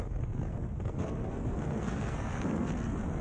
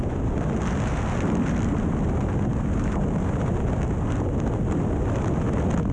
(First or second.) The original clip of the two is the second